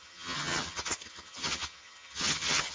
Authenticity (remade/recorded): remade